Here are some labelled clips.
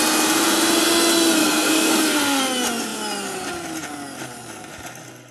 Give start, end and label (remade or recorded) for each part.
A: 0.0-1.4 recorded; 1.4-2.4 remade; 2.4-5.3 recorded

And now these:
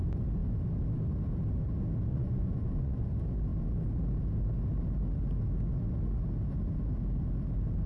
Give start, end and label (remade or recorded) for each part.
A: 0.0-2.1 recorded; 2.1-3.1 remade; 3.1-7.9 recorded

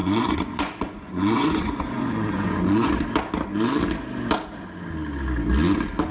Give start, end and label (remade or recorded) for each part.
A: 0.0-2.9 remade; 2.9-6.1 recorded

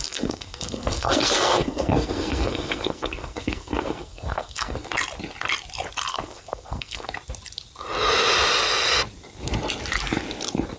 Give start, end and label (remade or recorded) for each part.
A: 0.0-4.9 remade; 4.9-6.1 recorded; 6.1-7.1 remade; 7.1-10.8 recorded

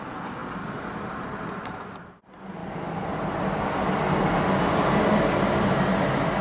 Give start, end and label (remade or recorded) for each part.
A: 0.0-0.4 recorded; 0.4-2.2 remade; 2.2-6.4 recorded

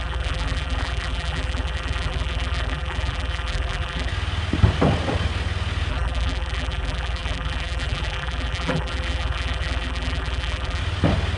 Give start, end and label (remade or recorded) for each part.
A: 0.0-4.1 remade; 4.1-5.9 recorded; 5.9-10.8 remade; 10.8-11.4 recorded